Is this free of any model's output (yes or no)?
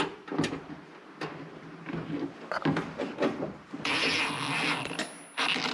yes